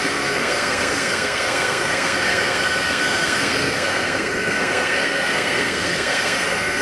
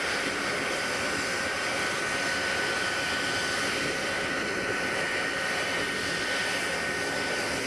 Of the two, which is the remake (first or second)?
first